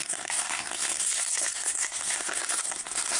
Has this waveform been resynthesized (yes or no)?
yes